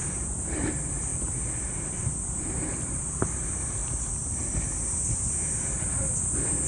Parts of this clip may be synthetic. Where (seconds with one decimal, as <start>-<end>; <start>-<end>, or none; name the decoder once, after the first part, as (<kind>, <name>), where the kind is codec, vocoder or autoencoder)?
none